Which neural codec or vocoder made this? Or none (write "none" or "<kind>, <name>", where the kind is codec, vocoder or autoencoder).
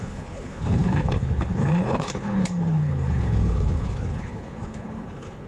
codec, HILCodec